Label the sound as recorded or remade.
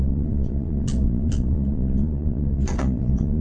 remade